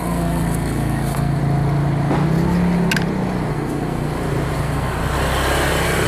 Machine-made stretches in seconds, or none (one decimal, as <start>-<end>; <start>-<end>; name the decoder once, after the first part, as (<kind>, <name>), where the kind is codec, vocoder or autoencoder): 0.0-1.4 (codec, SNAC); 3.5-4.1; 4.6-5.0